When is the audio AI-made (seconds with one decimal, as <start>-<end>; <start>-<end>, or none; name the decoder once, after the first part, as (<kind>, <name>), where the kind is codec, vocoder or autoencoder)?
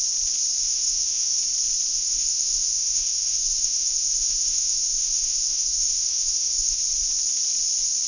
0.6-1.4 (autoencoder, DAC-VAE); 1.9-6.8